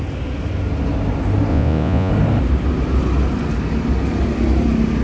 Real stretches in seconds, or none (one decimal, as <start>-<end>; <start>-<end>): 0.0-1.5; 2.1-5.0